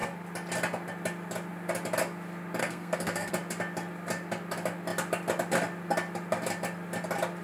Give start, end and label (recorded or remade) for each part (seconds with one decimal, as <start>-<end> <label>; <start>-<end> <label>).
0.0-2.6 recorded; 2.6-3.3 remade; 3.3-7.4 recorded